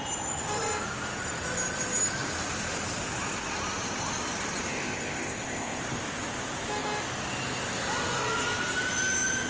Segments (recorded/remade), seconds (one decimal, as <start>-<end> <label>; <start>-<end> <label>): 0.0-4.7 recorded; 4.7-5.8 remade; 5.8-9.5 recorded